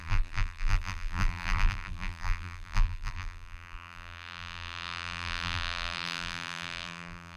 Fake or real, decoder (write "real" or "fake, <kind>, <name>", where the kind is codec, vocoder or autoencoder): fake, vocoder, BigVGAN v2